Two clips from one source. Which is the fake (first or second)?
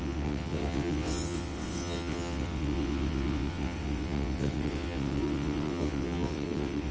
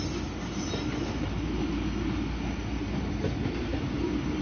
first